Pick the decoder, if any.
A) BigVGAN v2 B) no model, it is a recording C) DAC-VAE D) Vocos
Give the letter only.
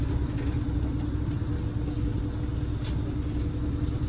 B